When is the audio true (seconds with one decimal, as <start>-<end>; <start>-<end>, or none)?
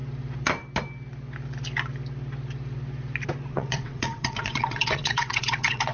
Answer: 0.0-3.5